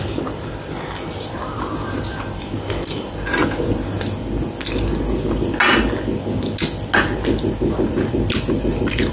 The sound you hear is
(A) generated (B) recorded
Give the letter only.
B